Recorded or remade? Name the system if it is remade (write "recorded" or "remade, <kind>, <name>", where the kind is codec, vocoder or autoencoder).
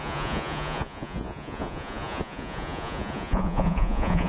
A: remade, vocoder, Vocos